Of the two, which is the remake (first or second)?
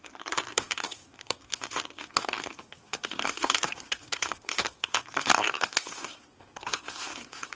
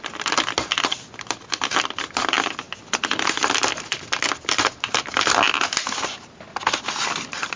first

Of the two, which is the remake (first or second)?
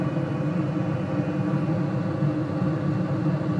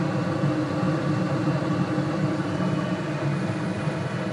second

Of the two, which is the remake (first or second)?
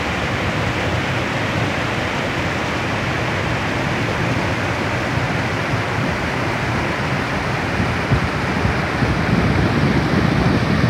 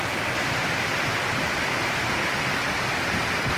second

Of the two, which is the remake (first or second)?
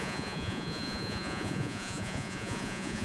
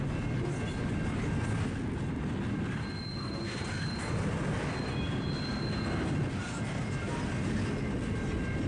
first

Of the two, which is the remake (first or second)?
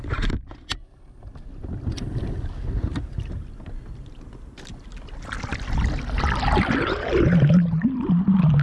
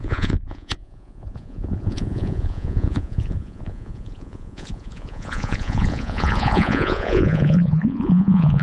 second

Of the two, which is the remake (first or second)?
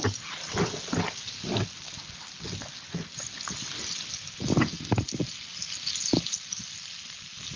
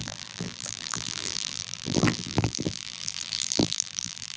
second